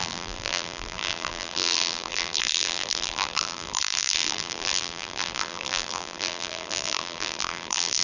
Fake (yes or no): yes